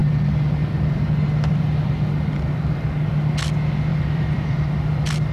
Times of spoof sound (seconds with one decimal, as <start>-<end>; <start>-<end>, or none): 3.9-4.7

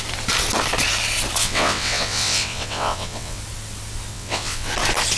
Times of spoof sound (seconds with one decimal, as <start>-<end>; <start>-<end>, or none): 1.4-3.4; 4.1-4.7

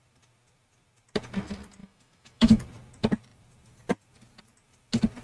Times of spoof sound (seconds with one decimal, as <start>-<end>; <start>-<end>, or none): 1.8-2.6

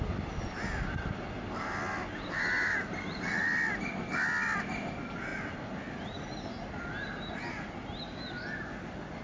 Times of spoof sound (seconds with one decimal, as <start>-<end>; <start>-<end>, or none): none

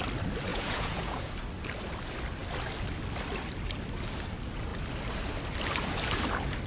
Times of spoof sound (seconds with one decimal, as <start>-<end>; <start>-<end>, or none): 0.5-1.3